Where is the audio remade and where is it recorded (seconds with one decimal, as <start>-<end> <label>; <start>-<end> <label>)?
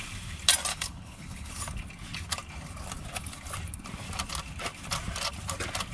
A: 0.0-0.7 recorded; 0.7-1.5 remade; 1.5-5.9 recorded